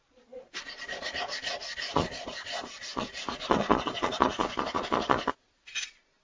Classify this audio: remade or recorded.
remade